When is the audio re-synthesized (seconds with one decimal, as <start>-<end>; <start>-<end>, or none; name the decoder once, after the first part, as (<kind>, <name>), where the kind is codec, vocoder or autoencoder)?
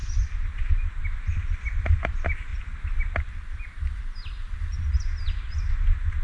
none